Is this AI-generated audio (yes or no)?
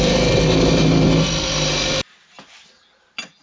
no